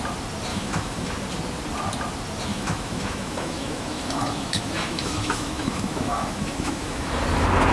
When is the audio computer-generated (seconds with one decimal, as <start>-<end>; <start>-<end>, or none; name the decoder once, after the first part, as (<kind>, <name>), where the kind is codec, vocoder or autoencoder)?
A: 0.5-1.1 (autoencoder, DAC-VAE); 2.5-7.1